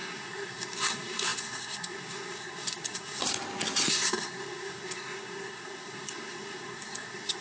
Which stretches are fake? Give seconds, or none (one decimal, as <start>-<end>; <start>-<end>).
0.0-3.2; 3.9-7.4